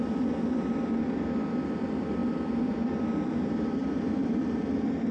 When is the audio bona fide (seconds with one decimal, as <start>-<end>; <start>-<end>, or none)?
0.0-3.8; 4.6-5.1